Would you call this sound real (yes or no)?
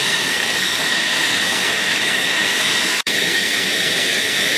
no